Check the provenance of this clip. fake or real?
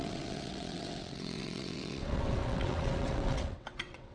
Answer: fake